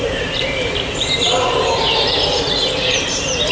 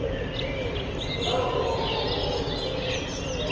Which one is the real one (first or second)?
second